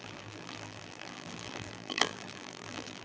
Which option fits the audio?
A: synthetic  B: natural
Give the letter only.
A